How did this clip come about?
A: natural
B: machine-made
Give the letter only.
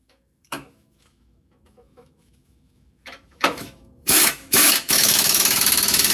B